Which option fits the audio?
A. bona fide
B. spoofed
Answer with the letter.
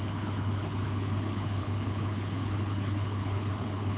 B